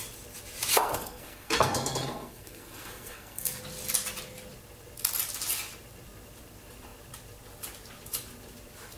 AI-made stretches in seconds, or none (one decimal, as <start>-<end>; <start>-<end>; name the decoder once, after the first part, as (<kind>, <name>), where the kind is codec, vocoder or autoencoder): 0.7-3.6 (codec, SNAC)